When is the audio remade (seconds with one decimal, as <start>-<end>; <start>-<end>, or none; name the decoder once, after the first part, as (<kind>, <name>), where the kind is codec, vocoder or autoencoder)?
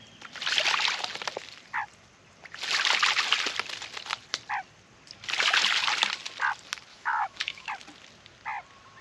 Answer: 6.9-7.7 (autoencoder, DAC-VAE)